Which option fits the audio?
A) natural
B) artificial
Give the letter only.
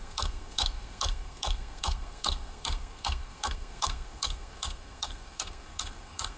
B